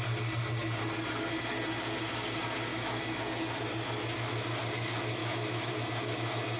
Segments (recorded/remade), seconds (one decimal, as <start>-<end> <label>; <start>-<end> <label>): 0.0-2.7 recorded; 2.7-3.2 remade; 3.2-5.2 recorded; 5.2-5.7 remade; 5.7-6.6 recorded